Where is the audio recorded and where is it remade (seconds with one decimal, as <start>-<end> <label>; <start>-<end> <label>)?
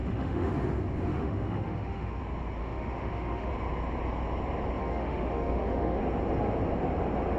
0.0-0.5 remade; 0.5-1.1 recorded; 1.1-2.2 remade; 2.2-2.6 recorded; 2.6-3.5 remade; 3.5-4.8 recorded; 4.8-6.0 remade; 6.0-7.4 recorded